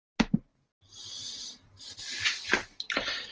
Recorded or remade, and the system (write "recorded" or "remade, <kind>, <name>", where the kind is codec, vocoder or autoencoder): recorded